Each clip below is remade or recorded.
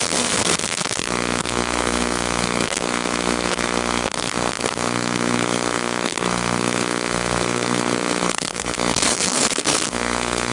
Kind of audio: remade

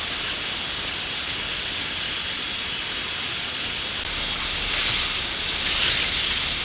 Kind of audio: recorded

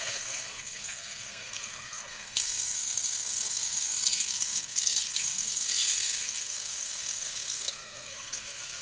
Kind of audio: remade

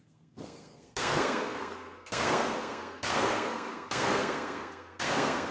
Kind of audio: remade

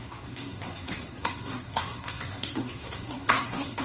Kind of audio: remade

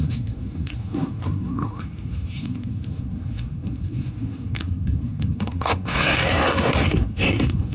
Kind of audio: remade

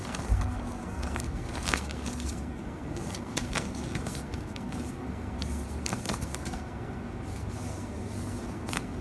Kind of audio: remade